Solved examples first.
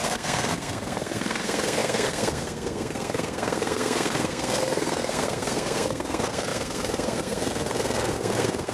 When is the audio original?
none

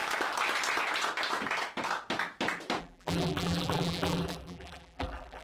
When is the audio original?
0.0-2.8